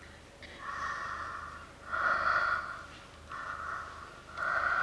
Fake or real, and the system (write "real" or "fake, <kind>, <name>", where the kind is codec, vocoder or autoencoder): real